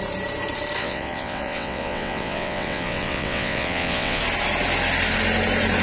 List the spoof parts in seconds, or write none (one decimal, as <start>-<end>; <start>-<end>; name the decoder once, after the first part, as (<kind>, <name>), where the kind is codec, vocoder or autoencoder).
0.8-4.2 (vocoder, WaveNeXt)